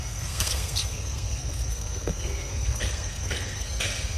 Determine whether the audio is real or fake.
fake